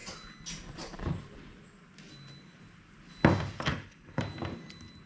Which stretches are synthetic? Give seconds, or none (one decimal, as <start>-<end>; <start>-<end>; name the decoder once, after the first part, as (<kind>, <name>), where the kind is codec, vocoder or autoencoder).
3.7-4.2 (codec, HILCodec)